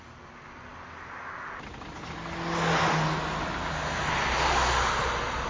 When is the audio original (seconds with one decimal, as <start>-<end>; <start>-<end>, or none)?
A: 0.0-5.5